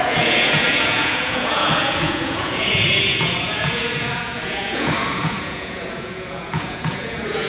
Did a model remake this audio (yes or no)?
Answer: yes